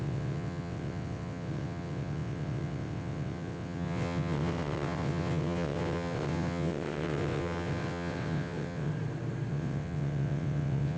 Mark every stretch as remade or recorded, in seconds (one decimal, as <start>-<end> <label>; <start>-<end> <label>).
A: 0.0-8.9 remade; 8.9-9.5 recorded; 9.5-11.0 remade